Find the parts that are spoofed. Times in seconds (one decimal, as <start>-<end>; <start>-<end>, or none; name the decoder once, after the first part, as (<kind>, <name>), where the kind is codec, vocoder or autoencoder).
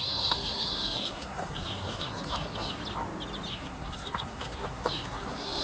0.0-2.8 (codec, SNAC); 3.5-5.6